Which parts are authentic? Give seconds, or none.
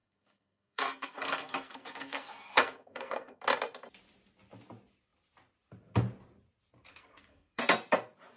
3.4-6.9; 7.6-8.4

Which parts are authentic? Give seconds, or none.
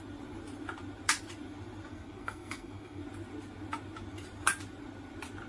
0.0-1.9; 3.0-5.5